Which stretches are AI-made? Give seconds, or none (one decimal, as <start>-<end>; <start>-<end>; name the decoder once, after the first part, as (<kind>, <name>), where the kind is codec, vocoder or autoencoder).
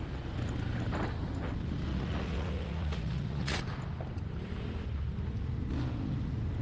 1.9-3.6 (vocoder, Vocos)